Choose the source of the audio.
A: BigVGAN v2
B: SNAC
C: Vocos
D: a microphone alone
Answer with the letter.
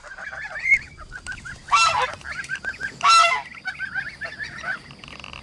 D